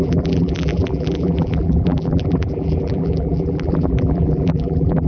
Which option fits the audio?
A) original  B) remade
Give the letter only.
B